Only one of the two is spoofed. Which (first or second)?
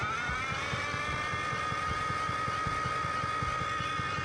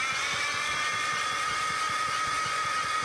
second